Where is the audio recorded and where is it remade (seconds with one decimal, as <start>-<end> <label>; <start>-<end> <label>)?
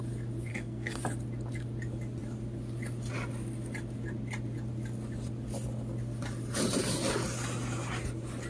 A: 0.0-0.5 recorded; 0.5-1.0 remade; 1.0-8.5 recorded